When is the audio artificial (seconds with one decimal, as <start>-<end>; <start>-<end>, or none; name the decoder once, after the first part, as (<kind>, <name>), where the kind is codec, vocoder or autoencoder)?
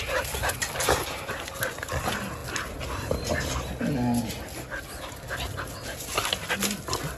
none